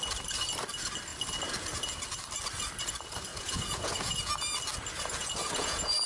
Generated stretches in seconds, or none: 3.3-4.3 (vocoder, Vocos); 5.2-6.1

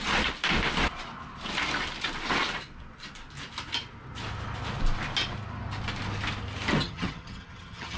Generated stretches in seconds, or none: 6.8-8.0 (vocoder, HiFi-GAN)